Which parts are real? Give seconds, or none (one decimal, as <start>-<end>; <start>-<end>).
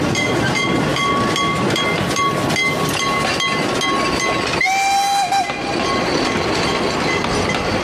0.0-7.8